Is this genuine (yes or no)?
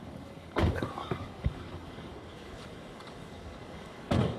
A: no